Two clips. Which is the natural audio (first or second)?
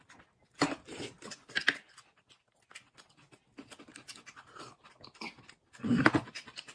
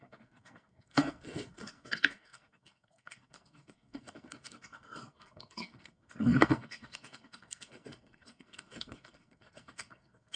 first